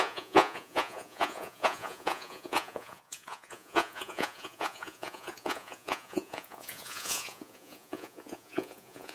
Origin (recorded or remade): remade